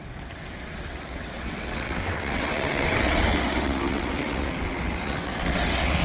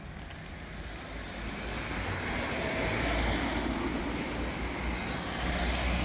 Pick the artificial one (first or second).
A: first